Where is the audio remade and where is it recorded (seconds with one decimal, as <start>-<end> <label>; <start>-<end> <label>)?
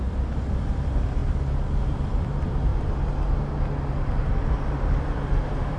0.0-1.2 remade; 1.2-1.8 recorded; 1.8-2.7 remade; 2.7-4.5 recorded; 4.5-5.8 remade